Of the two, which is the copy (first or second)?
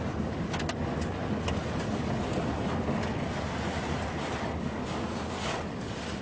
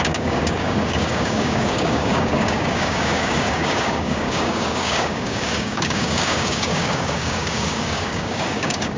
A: second